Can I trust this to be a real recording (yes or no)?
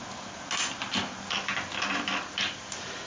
yes